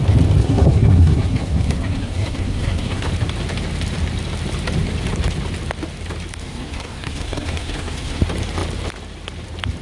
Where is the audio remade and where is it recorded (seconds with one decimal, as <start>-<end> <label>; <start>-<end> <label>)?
0.0-0.4 recorded; 0.4-3.1 remade; 3.1-6.4 recorded; 6.4-8.2 remade; 8.2-9.8 recorded